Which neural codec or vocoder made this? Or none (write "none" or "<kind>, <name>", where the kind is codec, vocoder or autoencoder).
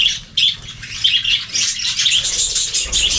none